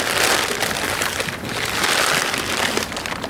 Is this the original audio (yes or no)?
yes